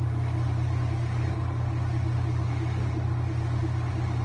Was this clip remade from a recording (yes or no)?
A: no